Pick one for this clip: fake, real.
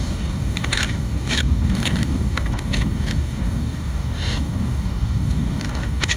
fake